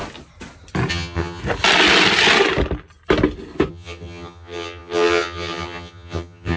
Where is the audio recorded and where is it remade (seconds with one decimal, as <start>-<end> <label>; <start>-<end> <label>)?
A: 0.0-0.9 recorded; 0.9-1.4 remade; 1.4-3.7 recorded; 3.7-6.6 remade